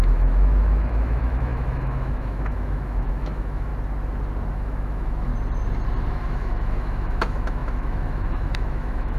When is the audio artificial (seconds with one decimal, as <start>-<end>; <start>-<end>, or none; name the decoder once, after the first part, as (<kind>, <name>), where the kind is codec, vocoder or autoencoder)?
0.0-3.7 (autoencoder, DAC-VAE); 4.5-5.3; 6.1-9.2